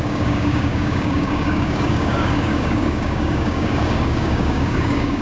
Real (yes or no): no